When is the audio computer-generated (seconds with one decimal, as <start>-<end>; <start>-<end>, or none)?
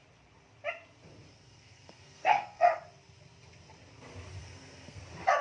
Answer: 1.3-2.8; 4.4-5.0